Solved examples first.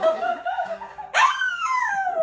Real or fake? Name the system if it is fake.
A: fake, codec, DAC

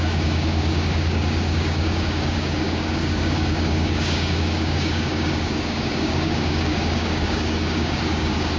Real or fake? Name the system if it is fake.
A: fake, codec, DAC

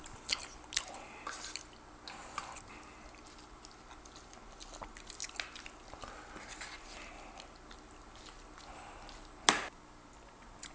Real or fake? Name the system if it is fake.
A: real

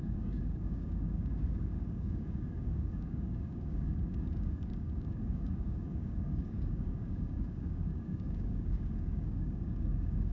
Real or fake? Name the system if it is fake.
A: fake, codec, DAC